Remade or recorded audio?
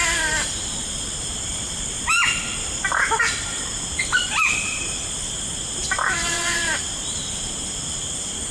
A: remade